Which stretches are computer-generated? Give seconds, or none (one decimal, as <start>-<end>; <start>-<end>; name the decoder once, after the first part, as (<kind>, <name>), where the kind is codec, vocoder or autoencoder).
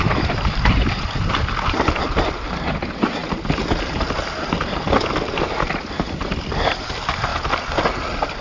0.0-3.2 (vocoder, BigVGAN v2); 4.5-7.3